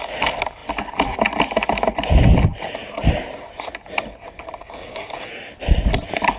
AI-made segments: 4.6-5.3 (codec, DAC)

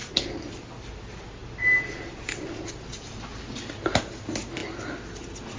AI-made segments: none

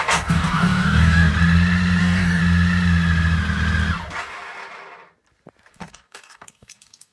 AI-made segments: 0.0-1.3 (codec, DAC); 2.0-2.4; 5.7-7.1